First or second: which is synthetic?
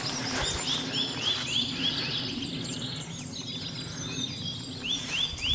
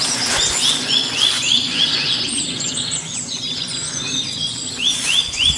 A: second